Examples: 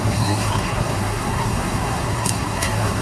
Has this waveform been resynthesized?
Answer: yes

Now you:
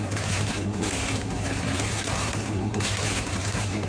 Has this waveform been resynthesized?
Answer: yes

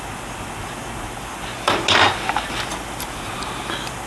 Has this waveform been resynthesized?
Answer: no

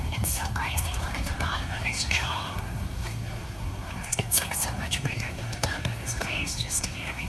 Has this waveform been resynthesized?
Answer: yes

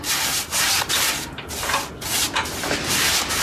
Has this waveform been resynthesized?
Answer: no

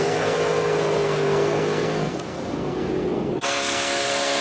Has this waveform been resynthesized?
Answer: yes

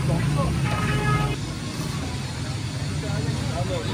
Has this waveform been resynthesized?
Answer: no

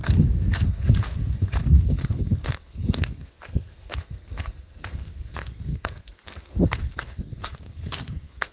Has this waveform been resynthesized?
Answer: yes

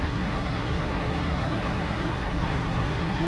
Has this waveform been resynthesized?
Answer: yes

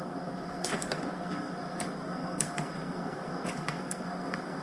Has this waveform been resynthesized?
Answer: yes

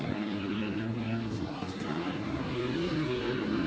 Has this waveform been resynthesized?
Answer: yes